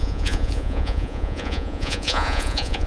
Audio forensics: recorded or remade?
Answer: remade